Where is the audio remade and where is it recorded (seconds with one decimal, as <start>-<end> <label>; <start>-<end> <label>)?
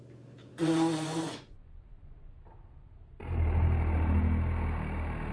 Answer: 0.0-0.4 recorded; 0.4-2.4 remade; 2.4-5.3 recorded